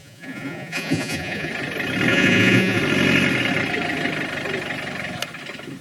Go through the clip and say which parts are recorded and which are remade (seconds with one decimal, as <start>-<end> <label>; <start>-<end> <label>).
0.0-1.5 remade; 1.5-2.1 recorded; 2.1-2.8 remade; 2.8-5.8 recorded